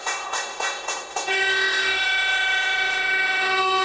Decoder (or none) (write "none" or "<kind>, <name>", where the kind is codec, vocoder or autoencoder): autoencoder, DAC-VAE